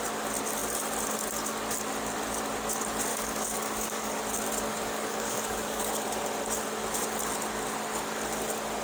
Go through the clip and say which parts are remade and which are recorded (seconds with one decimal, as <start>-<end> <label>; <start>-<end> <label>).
0.0-3.1 recorded; 3.1-4.2 remade; 4.2-4.7 recorded; 4.7-5.8 remade; 5.8-8.8 recorded